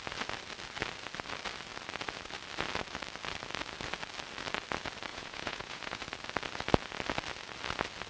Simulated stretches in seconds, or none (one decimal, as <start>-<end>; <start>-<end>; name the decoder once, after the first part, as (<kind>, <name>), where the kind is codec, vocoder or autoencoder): 5.1-6.0 (vocoder, Vocos)